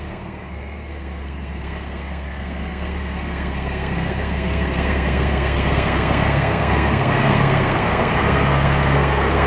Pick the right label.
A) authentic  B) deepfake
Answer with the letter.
B